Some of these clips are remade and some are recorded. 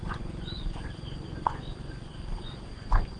remade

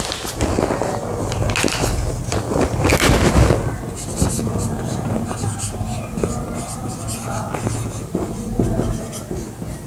recorded